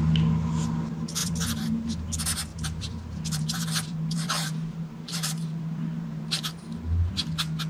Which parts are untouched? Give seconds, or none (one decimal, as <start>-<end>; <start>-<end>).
0.0-1.2; 2.1-2.5; 7.1-7.7